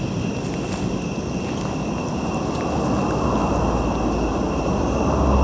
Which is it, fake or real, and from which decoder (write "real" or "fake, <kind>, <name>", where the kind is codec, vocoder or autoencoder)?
real